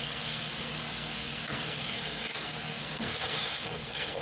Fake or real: fake